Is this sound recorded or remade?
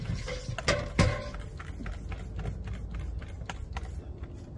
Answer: recorded